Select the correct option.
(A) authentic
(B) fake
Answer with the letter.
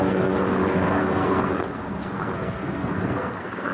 B